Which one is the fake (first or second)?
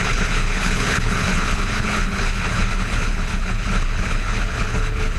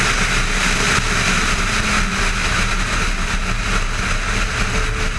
first